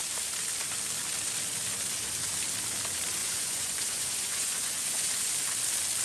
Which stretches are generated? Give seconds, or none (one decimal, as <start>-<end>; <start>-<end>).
3.2-5.3